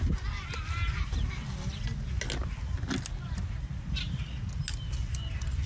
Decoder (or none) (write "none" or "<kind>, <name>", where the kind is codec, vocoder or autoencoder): none